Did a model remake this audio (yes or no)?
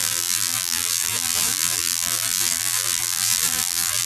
yes